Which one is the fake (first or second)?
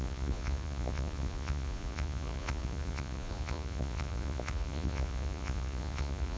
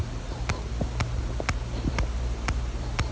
first